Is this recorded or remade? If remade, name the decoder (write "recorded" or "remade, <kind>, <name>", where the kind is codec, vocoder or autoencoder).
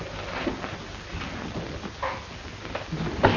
recorded